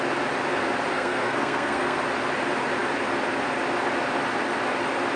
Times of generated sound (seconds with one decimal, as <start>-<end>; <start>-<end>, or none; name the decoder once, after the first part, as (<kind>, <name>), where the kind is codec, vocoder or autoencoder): 0.9-2.0 (codec, SNAC)